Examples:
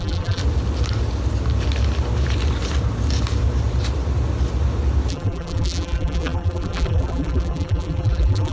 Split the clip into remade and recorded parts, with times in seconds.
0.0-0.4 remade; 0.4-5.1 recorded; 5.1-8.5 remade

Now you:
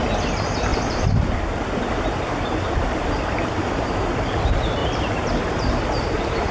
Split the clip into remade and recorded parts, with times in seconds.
0.0-0.7 recorded; 0.7-1.4 remade; 1.4-4.8 recorded; 4.8-6.5 remade

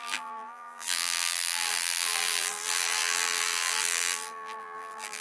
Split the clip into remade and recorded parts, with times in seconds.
0.0-5.2 remade

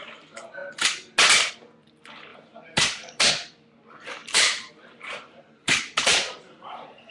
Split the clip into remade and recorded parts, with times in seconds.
0.0-2.3 recorded; 2.3-3.3 remade; 3.3-4.2 recorded; 4.2-7.1 remade

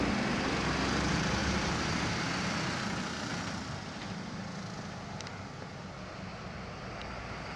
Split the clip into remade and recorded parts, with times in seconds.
0.0-1.4 recorded; 1.4-2.3 remade; 2.3-3.3 recorded; 3.3-4.9 remade; 4.9-6.3 recorded; 6.3-6.8 remade; 6.8-7.6 recorded

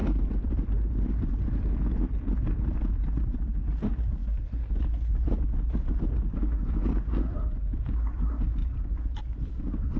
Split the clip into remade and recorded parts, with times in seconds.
0.0-0.7 remade; 0.7-8.6 recorded; 8.6-9.2 remade; 9.2-10.0 recorded

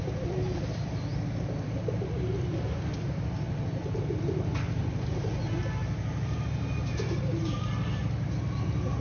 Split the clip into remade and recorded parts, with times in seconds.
0.0-5.3 remade; 5.3-7.2 recorded; 7.2-8.0 remade; 8.0-8.6 recorded; 8.6-9.0 remade